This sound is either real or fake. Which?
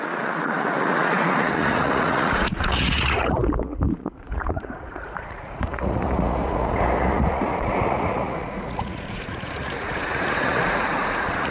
fake